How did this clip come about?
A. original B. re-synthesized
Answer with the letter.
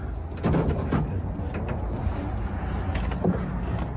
A